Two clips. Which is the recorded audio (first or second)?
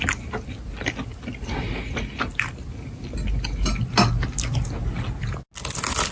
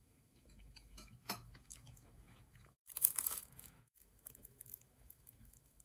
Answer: first